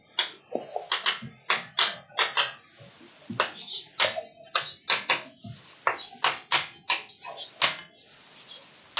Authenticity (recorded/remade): recorded